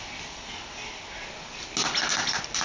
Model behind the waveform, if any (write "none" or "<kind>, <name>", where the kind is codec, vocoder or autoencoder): none